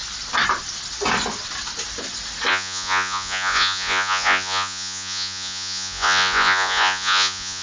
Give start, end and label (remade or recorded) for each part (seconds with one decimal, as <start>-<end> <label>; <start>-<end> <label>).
0.0-2.5 recorded; 2.5-7.6 remade